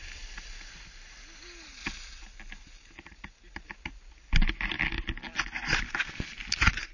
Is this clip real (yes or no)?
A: yes